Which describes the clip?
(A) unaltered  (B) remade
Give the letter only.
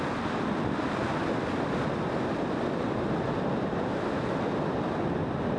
A